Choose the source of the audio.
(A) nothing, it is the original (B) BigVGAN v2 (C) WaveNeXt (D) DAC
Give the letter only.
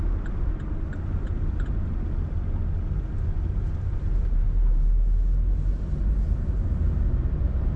A